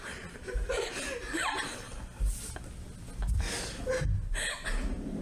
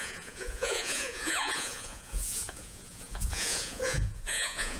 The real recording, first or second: first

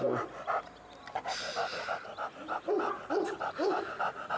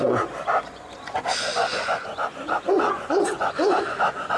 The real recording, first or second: first